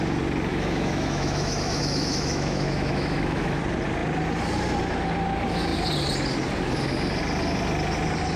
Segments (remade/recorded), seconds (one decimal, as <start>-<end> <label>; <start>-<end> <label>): 0.0-0.5 recorded; 0.5-3.6 remade; 3.6-8.4 recorded